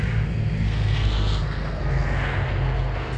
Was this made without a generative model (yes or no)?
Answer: no